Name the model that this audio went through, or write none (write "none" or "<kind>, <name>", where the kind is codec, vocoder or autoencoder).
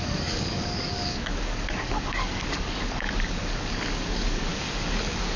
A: codec, DAC